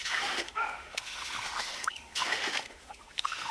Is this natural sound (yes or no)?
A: no